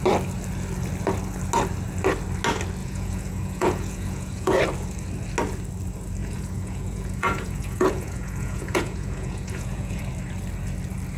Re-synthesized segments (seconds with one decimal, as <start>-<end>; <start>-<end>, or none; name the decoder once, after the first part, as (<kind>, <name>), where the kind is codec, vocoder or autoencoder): 2.8-4.6 (vocoder, Vocos); 6.2-10.0